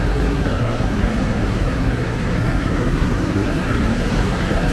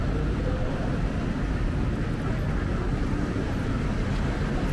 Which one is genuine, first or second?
second